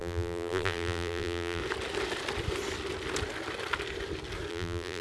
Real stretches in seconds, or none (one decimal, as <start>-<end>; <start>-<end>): 1.6-4.5